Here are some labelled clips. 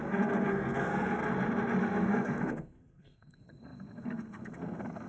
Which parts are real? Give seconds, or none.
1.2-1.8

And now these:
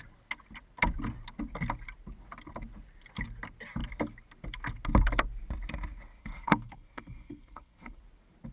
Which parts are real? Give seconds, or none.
0.0-6.2; 8.0-8.5

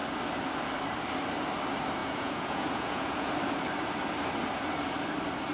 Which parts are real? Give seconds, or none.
0.0-2.0; 3.3-5.5